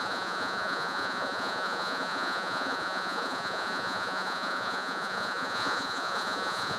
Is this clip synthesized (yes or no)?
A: yes